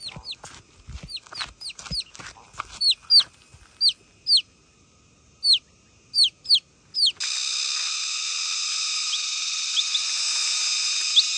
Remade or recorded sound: recorded